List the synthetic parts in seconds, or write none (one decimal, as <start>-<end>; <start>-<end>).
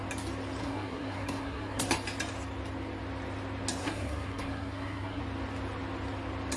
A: 0.6-1.9; 3.8-5.2